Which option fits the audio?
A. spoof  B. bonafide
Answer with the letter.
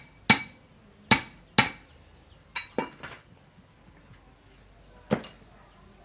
B